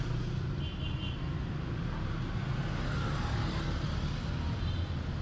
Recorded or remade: recorded